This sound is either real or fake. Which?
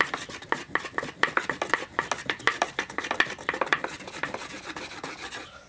real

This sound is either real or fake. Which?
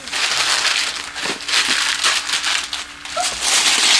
real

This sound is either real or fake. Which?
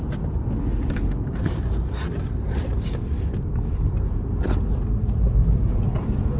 real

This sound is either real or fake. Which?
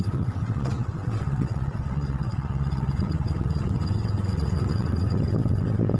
fake